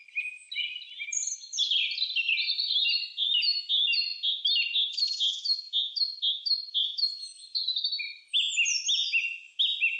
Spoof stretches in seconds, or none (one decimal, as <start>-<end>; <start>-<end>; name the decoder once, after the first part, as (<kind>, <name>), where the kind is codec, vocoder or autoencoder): none